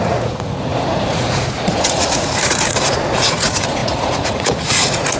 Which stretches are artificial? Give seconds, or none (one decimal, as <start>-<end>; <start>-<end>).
0.0-5.2